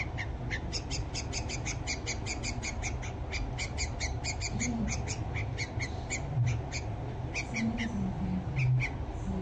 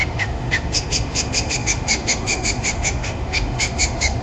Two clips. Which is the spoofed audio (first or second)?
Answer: second